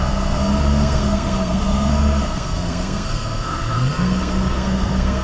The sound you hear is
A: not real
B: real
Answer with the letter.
A